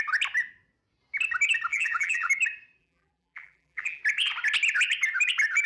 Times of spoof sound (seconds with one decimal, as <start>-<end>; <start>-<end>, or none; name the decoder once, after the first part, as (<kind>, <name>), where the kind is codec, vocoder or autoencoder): 1.7-2.3 (vocoder, BigVGAN v2); 2.8-4.0